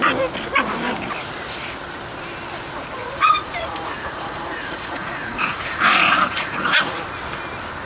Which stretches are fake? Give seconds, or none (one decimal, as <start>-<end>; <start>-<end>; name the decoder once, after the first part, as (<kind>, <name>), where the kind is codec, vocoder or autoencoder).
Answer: 3.0-7.0 (vocoder, Vocos)

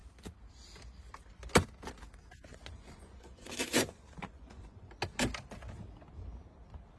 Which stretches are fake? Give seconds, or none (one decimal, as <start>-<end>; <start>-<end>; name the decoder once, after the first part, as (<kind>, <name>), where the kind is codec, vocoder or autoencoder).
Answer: 2.5-4.9 (vocoder, Vocos)